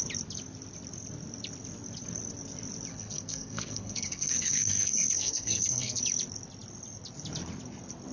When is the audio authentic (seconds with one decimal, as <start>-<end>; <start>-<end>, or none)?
0.0-2.9; 6.0-8.1